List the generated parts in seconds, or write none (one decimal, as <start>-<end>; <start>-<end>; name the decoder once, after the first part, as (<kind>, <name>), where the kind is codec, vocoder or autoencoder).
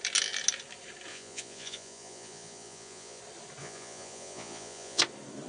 1.1-3.2 (vocoder, Vocos); 3.6-5.0